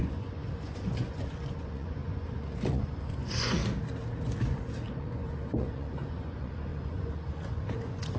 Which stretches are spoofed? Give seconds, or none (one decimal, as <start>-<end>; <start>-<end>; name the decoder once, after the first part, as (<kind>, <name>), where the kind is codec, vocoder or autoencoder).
0.0-3.6 (vocoder, Vocos); 4.9-8.2